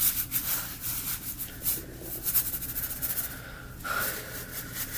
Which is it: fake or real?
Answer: real